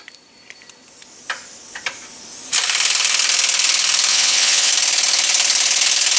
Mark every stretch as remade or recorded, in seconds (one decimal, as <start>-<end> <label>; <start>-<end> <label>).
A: 0.0-4.1 recorded; 4.1-4.7 remade; 4.7-6.2 recorded